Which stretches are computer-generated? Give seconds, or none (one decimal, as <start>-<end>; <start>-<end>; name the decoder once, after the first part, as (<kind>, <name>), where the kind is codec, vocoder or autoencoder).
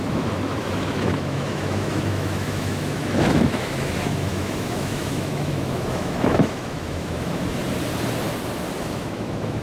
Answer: 0.0-7.6 (autoencoder, DAC-VAE); 8.8-9.6